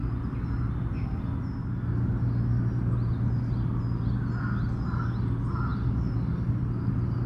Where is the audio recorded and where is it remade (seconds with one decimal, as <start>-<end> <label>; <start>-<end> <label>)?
0.0-7.3 recorded